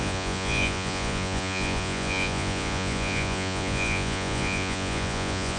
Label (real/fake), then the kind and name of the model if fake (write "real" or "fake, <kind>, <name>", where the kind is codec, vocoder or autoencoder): fake, vocoder, Vocos